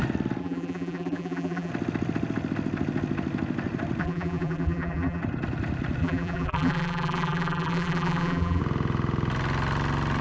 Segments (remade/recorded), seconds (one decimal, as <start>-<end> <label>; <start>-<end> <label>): 0.0-0.4 recorded; 0.4-1.7 remade; 1.7-4.0 recorded; 4.0-5.2 remade; 5.2-6.0 recorded; 6.0-8.6 remade; 8.6-10.2 recorded